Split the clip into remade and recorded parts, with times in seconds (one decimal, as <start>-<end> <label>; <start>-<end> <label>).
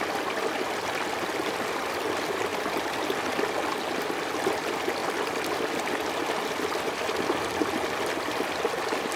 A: 0.0-9.2 recorded